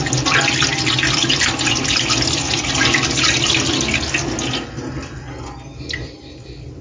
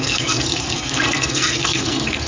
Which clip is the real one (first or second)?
first